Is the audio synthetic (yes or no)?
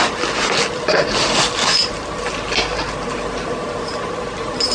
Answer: no